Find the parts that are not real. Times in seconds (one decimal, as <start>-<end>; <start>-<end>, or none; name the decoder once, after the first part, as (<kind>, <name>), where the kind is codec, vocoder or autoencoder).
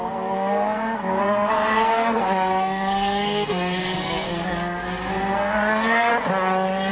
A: 0.0-6.1 (codec, SNAC)